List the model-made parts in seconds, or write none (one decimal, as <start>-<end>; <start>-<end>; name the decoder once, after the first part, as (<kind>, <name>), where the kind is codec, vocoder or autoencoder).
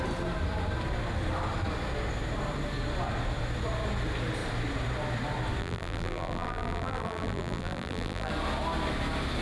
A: 5.6-8.3 (vocoder, BigVGAN v2)